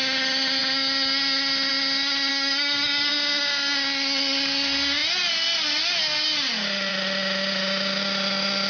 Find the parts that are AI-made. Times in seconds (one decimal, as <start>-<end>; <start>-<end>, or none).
2.3-3.1